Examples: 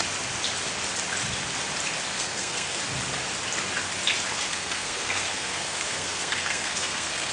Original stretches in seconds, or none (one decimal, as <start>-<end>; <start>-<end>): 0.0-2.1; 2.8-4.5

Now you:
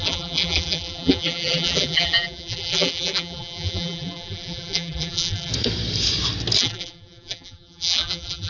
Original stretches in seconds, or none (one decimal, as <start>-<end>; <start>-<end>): 5.5-6.6

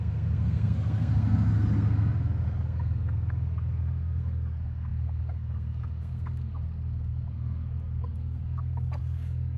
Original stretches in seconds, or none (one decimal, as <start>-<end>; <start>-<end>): none